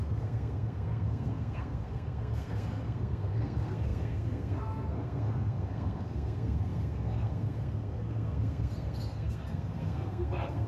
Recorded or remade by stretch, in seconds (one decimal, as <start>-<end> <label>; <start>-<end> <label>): 0.0-10.7 remade